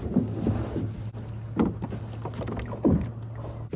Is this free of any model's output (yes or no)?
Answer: yes